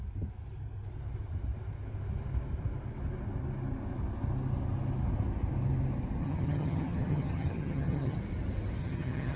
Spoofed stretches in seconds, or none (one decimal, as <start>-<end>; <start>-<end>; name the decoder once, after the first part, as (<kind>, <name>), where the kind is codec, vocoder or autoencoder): 6.2-8.2 (vocoder, HiFi-GAN); 8.8-9.4